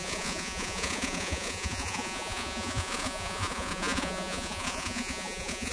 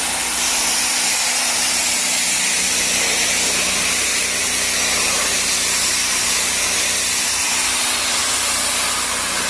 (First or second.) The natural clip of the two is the second